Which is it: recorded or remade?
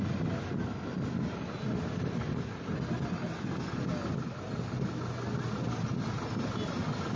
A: recorded